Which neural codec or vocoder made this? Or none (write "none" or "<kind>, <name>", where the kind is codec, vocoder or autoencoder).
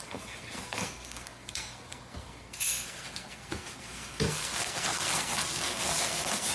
codec, SNAC